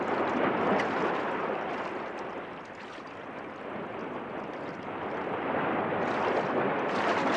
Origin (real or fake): real